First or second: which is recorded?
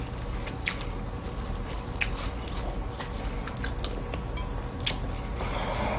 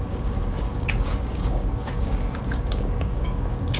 first